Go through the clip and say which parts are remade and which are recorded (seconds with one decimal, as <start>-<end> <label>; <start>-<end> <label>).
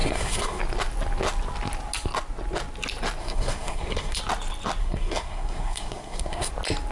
0.0-0.6 remade; 0.6-3.2 recorded; 3.2-4.2 remade; 4.2-4.8 recorded; 4.8-6.5 remade; 6.5-6.9 recorded